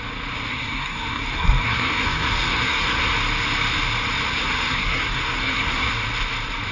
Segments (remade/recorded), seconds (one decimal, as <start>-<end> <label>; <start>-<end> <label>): 0.0-0.5 recorded; 0.5-3.1 remade; 3.1-4.3 recorded; 4.3-5.9 remade; 5.9-6.7 recorded